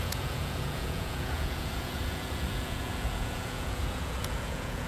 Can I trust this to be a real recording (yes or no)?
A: no